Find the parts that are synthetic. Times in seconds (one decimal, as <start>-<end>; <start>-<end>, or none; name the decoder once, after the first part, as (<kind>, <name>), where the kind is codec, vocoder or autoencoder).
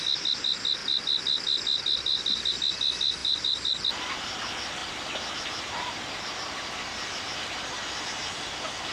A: 3.2-3.9 (vocoder, BigVGAN v2); 4.8-8.0